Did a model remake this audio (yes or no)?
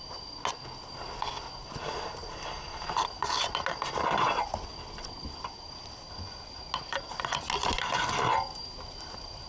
no